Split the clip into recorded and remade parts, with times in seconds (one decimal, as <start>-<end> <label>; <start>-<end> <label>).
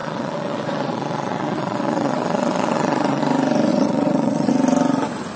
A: 0.0-3.2 remade; 3.2-3.7 recorded; 3.7-4.5 remade; 4.5-5.4 recorded